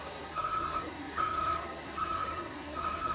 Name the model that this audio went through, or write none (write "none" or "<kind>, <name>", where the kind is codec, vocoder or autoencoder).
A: codec, SNAC